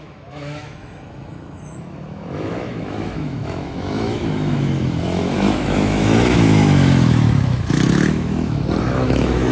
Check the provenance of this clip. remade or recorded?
remade